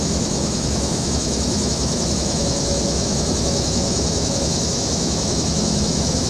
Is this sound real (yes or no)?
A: no